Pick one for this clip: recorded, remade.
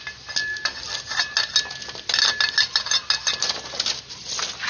recorded